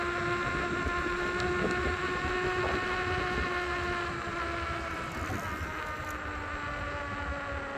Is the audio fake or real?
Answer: real